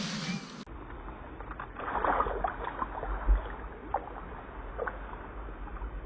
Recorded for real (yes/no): yes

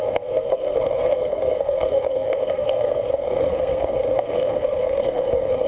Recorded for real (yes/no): no